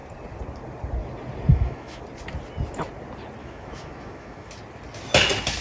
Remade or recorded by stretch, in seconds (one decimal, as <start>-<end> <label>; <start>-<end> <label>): 0.0-1.5 recorded; 1.5-2.0 remade; 2.0-3.4 recorded; 3.4-4.5 remade; 4.5-5.6 recorded